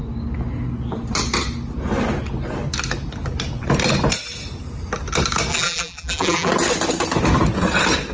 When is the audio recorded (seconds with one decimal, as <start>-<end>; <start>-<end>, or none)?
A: 0.0-5.5; 6.5-8.1